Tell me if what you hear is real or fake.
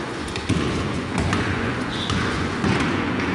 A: fake